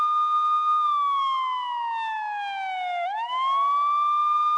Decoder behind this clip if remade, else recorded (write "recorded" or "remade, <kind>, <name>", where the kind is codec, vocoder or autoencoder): recorded